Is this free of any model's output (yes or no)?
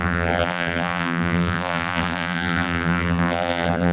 no